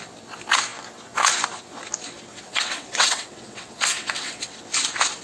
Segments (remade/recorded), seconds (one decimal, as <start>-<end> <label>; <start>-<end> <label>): 0.0-2.3 recorded; 2.3-4.6 remade; 4.6-5.2 recorded